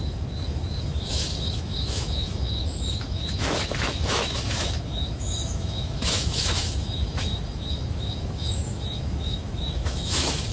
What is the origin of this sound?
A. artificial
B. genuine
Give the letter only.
A